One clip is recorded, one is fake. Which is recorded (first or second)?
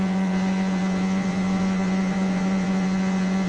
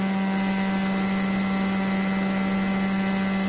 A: second